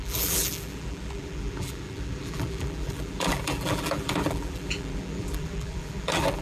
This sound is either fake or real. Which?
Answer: fake